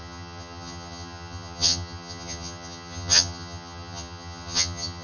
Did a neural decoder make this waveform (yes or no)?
yes